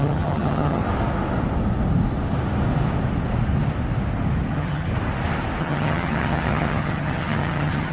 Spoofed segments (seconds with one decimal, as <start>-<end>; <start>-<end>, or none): 0.0-0.8; 4.5-4.9; 5.6-7.9